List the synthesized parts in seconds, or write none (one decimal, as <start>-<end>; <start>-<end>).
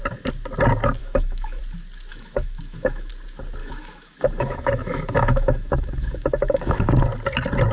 1.0-1.6; 2.1-3.1; 3.6-6.9